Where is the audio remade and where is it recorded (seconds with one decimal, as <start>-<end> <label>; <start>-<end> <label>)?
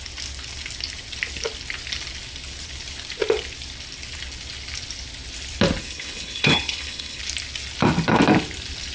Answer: 0.0-5.8 recorded; 5.8-7.2 remade; 7.2-8.9 recorded